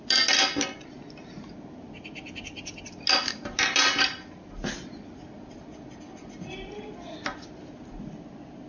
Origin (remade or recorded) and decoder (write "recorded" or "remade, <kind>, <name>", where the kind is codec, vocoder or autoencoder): recorded